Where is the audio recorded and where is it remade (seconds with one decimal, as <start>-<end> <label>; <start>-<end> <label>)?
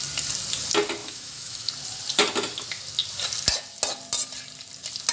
0.0-1.0 recorded; 1.0-1.7 remade; 1.7-5.1 recorded